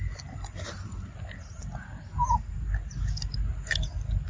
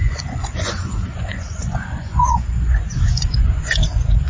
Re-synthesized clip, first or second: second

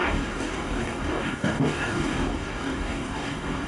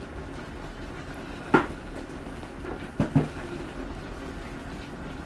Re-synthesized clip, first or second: first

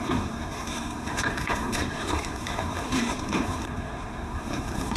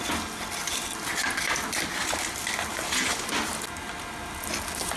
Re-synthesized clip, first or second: first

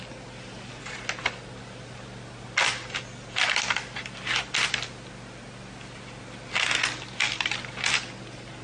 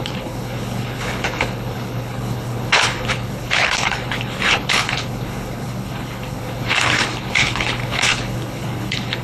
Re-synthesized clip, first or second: second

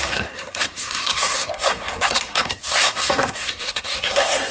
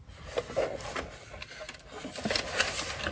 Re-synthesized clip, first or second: first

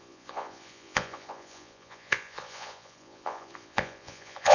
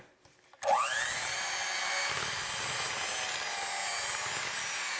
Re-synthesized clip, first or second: first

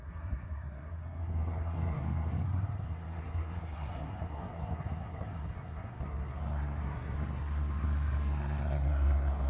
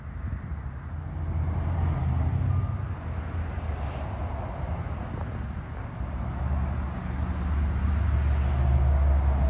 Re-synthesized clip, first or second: first